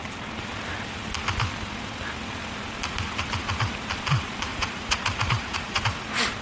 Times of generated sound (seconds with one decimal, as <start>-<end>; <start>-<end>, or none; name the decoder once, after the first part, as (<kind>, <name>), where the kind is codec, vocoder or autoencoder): 4.5-5.8 (vocoder, Vocos)